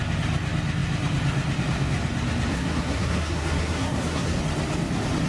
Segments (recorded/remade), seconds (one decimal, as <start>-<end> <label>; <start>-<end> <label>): 0.0-2.5 recorded; 2.5-4.4 remade; 4.4-5.3 recorded